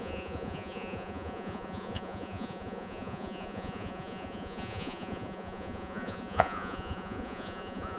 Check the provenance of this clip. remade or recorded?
remade